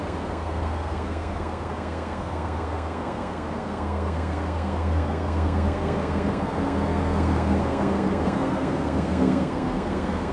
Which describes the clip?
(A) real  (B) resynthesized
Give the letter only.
B